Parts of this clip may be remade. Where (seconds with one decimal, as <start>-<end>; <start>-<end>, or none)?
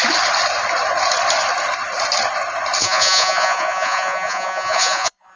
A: 2.8-5.4